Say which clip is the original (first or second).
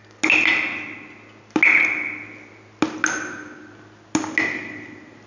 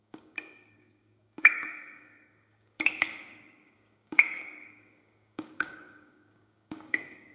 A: first